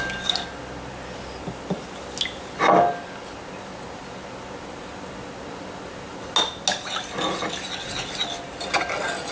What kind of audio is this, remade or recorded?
recorded